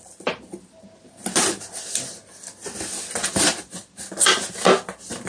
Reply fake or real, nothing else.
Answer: real